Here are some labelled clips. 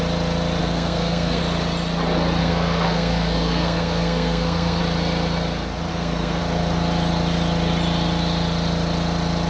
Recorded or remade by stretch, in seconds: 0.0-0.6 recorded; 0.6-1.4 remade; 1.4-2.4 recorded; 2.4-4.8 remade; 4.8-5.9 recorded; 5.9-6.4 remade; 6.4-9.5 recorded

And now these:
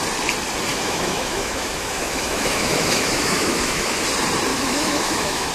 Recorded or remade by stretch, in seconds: 0.0-0.7 recorded; 0.7-4.0 remade; 4.0-4.5 recorded; 4.5-5.5 remade